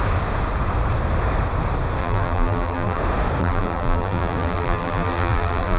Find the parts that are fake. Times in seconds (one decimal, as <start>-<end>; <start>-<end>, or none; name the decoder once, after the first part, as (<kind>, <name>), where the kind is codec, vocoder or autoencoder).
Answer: 2.0-3.0 (vocoder, BigVGAN v2); 3.4-5.8